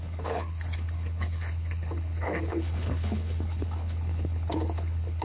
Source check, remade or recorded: remade